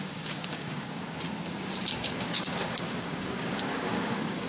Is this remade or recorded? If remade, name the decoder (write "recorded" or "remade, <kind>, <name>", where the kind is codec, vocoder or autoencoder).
remade, codec, DAC